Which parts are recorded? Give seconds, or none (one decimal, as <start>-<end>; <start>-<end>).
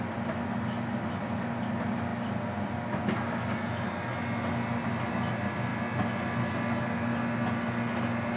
0.0-8.4